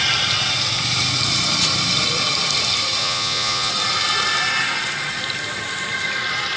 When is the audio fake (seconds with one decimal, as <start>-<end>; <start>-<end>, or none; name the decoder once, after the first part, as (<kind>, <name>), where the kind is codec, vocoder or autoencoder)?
3.0-3.7 (vocoder, Vocos)